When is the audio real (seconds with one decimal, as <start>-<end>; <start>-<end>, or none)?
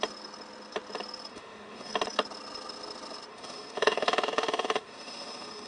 0.0-1.3; 1.9-3.3